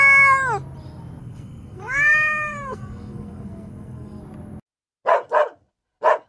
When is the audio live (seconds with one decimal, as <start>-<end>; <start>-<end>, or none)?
0.0-1.2; 4.2-6.3